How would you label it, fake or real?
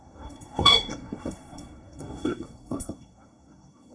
fake